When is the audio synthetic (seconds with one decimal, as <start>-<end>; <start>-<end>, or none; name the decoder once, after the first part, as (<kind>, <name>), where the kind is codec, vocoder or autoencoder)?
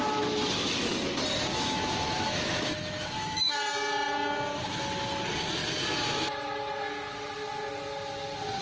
1.5-3.6 (autoencoder, DAC-VAE)